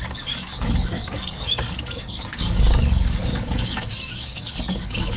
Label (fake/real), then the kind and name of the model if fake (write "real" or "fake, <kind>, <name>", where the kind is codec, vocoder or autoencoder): fake, codec, DAC